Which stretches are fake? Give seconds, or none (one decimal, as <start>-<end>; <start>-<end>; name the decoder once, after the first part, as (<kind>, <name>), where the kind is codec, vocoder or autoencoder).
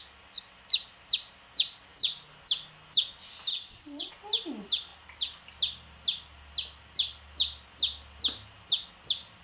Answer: 3.5-4.1 (vocoder, WaveNeXt)